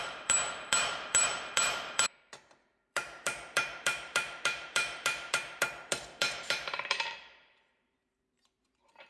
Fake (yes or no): yes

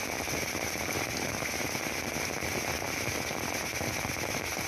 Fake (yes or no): no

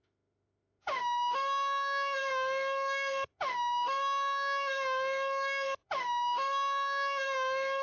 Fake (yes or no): yes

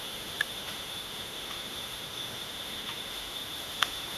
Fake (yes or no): yes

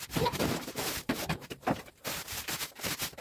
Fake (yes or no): yes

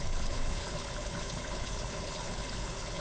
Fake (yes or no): yes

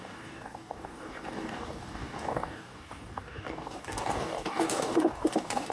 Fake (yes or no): yes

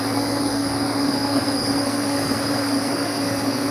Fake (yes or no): yes